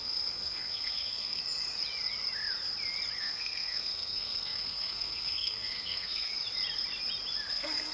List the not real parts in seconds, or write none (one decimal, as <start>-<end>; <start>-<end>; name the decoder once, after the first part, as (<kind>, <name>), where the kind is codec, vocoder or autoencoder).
0.0-1.4 (codec, SNAC); 3.2-6.3; 7.5-7.9